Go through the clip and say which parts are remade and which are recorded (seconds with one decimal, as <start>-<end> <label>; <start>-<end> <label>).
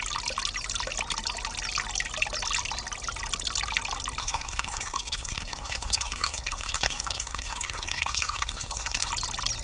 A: 0.0-4.2 recorded; 4.2-9.1 remade; 9.1-9.6 recorded